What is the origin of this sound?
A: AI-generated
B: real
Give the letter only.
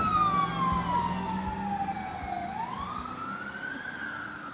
B